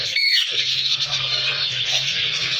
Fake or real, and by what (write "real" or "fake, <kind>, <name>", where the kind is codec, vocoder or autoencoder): fake, codec, SNAC